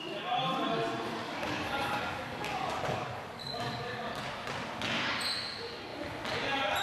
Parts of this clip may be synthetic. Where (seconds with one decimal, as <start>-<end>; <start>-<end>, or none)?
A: 1.2-4.1